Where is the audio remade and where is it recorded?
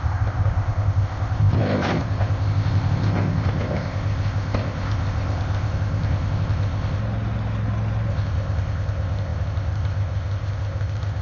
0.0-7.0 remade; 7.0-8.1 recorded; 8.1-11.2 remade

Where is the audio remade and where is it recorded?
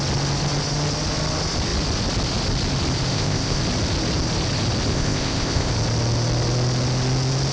0.0-3.1 recorded; 3.1-3.6 remade; 3.6-4.9 recorded; 4.9-5.7 remade; 5.7-7.5 recorded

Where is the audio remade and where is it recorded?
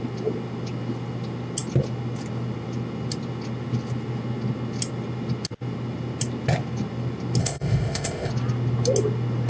0.0-7.4 recorded; 7.4-8.3 remade; 8.3-9.5 recorded